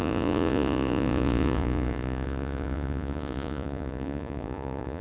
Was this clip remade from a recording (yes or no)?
yes